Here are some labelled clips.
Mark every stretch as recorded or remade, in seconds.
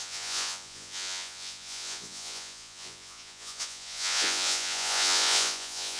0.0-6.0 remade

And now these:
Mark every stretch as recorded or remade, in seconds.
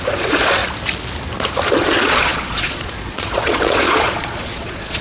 0.0-0.6 remade; 0.6-1.8 recorded; 1.8-5.0 remade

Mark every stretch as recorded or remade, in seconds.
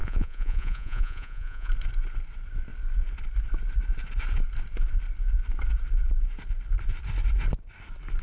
0.0-1.7 remade; 1.7-8.2 recorded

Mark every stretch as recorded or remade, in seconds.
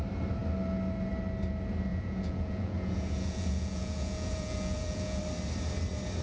0.0-1.9 recorded; 1.9-5.2 remade; 5.2-6.2 recorded